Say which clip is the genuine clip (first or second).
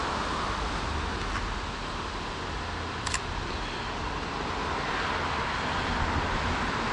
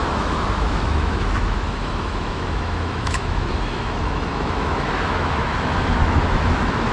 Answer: first